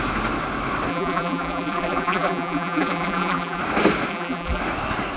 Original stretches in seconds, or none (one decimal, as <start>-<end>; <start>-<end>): 0.0-0.9; 3.6-4.1; 4.6-5.2